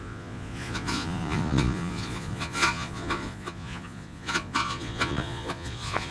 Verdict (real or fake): fake